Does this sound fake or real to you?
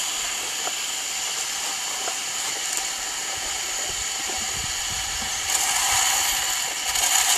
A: real